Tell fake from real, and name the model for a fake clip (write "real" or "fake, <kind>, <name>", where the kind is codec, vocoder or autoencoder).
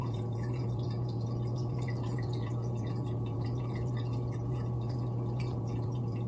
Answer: fake, vocoder, Vocos